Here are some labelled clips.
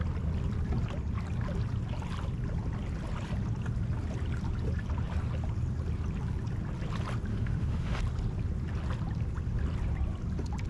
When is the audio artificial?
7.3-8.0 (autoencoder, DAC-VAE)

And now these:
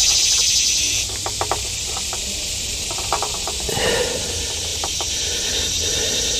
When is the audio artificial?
none

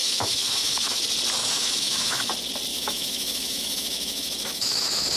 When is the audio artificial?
0.0-1.0 (autoencoder, DAC-VAE); 1.4-2.3; 2.7-5.2

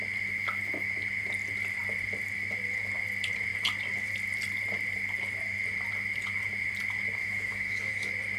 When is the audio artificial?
7.2-7.9 (autoencoder, DAC-VAE)